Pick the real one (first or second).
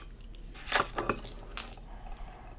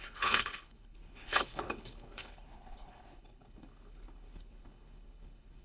first